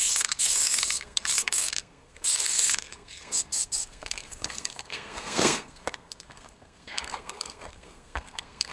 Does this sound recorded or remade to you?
remade